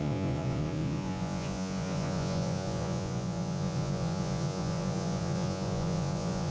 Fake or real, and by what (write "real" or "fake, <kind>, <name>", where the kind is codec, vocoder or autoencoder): fake, vocoder, Vocos